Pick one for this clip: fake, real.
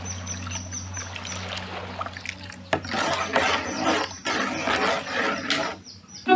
real